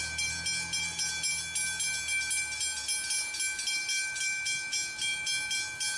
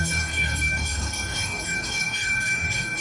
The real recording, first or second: first